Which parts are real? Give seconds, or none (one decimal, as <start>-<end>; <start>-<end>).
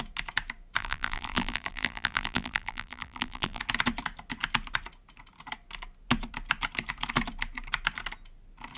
0.0-0.8; 3.6-8.8